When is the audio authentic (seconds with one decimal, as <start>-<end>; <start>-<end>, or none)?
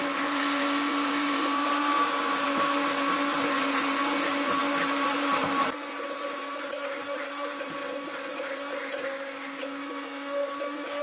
7.8-11.0